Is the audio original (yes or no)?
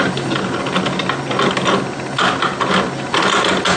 yes